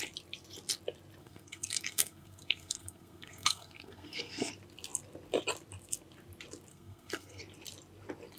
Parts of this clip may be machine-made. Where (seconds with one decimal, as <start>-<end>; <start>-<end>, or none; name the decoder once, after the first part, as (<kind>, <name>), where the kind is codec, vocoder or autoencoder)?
1.2-4.5 (codec, SNAC); 6.7-7.4